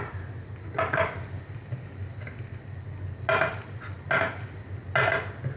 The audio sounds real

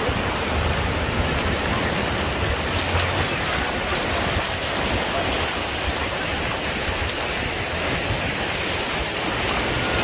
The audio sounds real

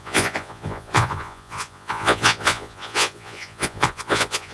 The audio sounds fake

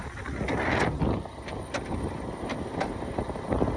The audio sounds real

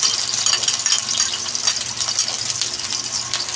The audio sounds real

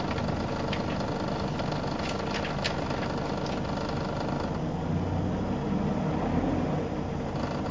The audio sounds real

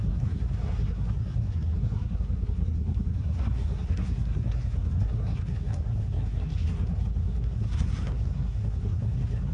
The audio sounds fake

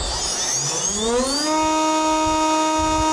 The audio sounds real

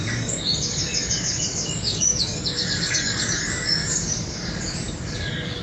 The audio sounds fake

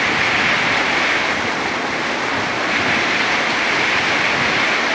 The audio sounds real